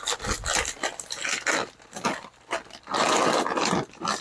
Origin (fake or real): real